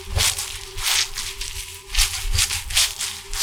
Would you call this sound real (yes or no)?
yes